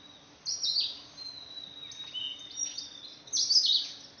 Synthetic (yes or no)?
no